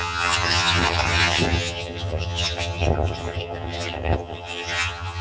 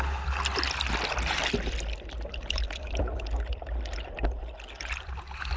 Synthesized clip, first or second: first